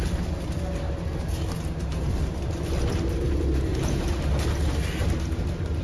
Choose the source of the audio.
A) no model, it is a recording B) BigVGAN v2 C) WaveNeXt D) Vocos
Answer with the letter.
A